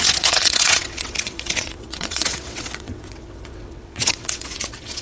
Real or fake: fake